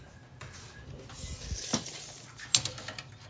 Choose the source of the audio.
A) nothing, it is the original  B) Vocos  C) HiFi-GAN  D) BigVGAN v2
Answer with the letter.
A